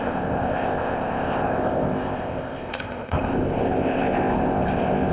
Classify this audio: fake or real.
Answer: fake